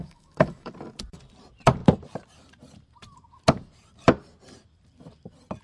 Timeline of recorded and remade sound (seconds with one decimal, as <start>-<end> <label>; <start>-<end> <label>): 0.0-0.7 remade; 0.7-5.6 recorded